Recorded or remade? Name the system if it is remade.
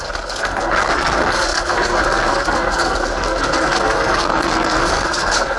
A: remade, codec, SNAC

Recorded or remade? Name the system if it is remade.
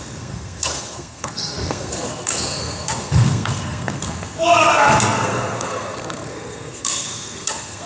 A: remade, codec, SNAC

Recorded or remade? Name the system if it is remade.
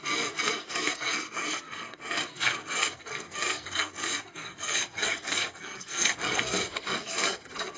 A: remade, codec, SNAC